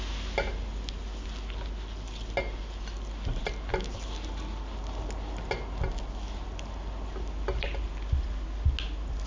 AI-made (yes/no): no